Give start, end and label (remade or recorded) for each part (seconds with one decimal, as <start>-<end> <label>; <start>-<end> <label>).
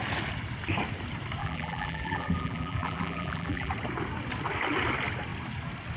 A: 0.0-1.4 recorded; 1.4-3.7 remade; 3.7-6.0 recorded